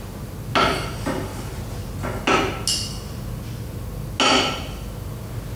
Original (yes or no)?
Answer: yes